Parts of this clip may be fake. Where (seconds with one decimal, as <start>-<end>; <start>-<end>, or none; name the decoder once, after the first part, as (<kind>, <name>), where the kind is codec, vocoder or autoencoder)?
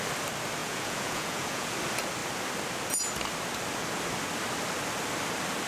0.6-1.7 (vocoder, Vocos)